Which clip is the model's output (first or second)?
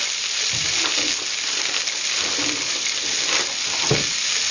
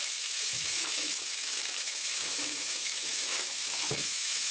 second